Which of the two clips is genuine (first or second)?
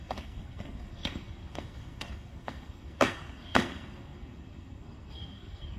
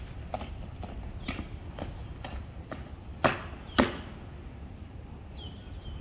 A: second